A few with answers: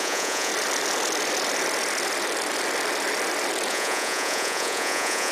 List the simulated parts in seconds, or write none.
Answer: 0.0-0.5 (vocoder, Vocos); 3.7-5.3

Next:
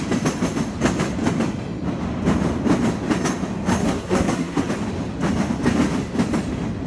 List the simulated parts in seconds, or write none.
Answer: 3.8-4.7 (codec, SNAC)